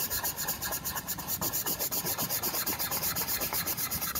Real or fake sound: fake